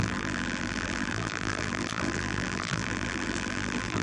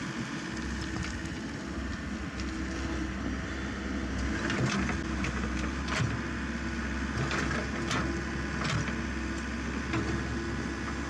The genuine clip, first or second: second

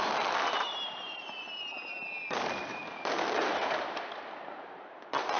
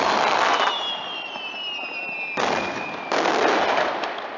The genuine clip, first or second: second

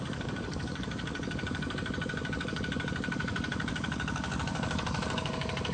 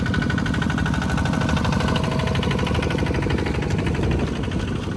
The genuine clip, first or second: second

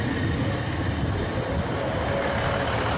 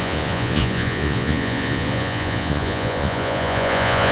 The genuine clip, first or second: first